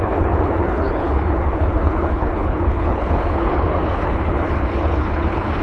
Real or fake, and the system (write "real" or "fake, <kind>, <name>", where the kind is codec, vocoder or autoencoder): fake, codec, HILCodec